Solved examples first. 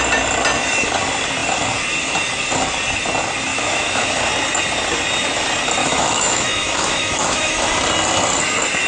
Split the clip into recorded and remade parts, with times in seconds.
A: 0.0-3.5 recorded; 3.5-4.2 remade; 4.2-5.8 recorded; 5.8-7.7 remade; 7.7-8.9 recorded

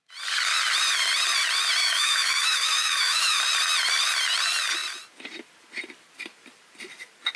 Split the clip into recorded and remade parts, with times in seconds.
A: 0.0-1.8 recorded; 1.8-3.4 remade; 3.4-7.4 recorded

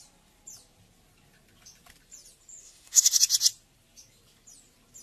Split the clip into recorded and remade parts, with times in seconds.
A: 0.0-2.6 recorded; 2.6-3.2 remade; 3.2-5.0 recorded